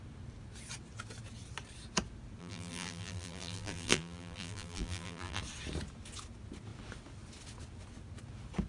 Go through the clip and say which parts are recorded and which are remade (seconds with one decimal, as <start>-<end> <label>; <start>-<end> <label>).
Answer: 0.0-2.4 recorded; 2.4-5.4 remade; 5.4-8.7 recorded